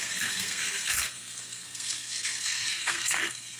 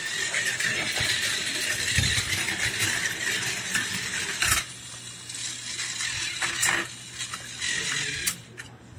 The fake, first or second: first